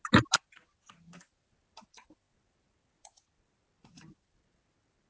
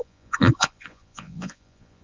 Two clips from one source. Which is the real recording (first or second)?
first